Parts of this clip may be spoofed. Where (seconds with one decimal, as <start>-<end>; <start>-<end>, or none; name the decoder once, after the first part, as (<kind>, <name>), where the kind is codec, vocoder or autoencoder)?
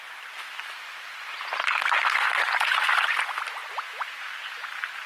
none